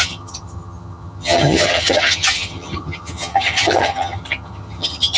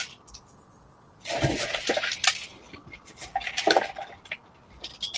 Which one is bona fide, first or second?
second